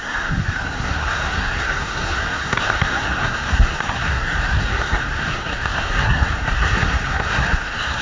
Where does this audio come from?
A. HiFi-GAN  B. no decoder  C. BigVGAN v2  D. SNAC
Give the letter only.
D